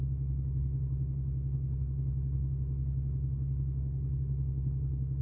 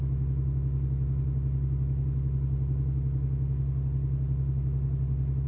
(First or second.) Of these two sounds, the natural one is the second